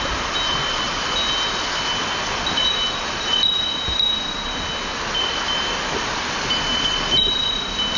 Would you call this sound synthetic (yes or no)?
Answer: no